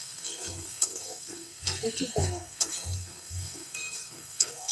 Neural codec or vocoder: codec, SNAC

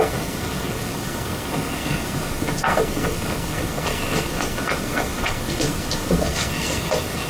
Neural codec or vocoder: codec, SNAC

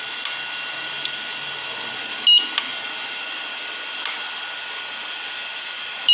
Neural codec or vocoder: none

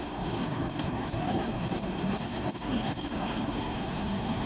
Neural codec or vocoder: codec, SNAC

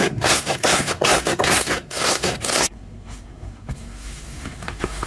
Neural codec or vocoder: codec, SNAC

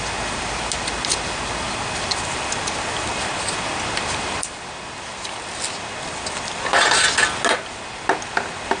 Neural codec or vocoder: none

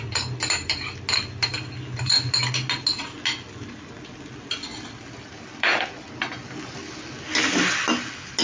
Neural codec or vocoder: none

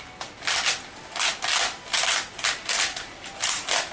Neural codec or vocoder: none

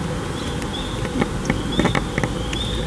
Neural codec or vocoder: none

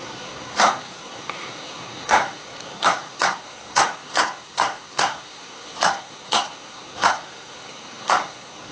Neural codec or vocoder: codec, SNAC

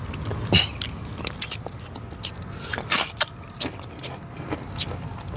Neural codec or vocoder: none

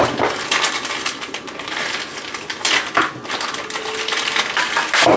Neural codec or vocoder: none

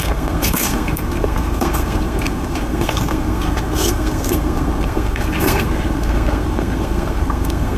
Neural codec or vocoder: codec, SNAC